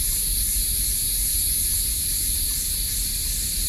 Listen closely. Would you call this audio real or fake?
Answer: real